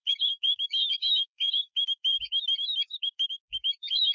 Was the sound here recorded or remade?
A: remade